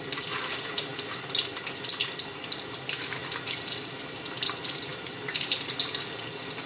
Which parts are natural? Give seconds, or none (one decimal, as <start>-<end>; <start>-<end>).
0.0-3.2; 4.0-4.9; 5.8-6.7